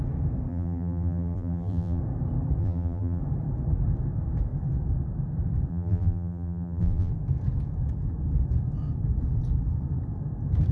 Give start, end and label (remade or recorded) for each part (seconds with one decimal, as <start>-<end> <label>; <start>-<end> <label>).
0.0-0.5 recorded; 0.5-2.0 remade; 2.0-2.6 recorded; 2.6-3.2 remade; 3.2-5.7 recorded; 5.7-7.1 remade; 7.1-10.7 recorded